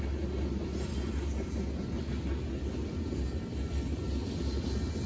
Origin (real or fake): real